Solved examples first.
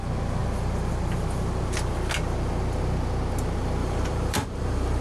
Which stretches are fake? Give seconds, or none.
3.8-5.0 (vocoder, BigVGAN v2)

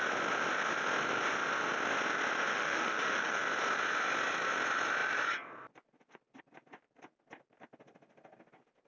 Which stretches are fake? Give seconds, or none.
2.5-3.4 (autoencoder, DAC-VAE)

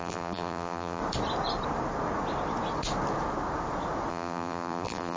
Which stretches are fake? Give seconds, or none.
0.0-1.0 (vocoder, BigVGAN v2); 4.1-5.2

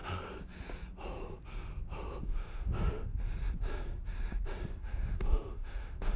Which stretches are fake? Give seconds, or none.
2.2-3.1 (autoencoder, DAC-VAE); 4.8-6.2

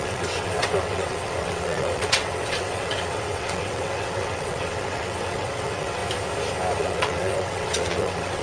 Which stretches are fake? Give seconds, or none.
0.0-6.0 (vocoder, WaveNeXt); 6.8-8.4

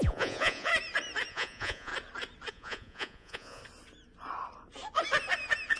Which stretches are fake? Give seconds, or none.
0.0-0.7 (vocoder, Vocos); 1.3-1.9; 2.5-3.6

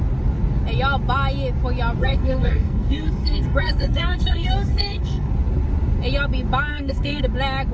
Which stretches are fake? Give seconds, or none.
2.0-5.3 (codec, SNAC); 6.7-7.2

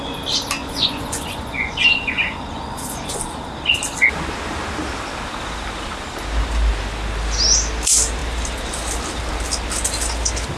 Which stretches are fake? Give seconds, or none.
0.6-3.2 (vocoder, Vocos)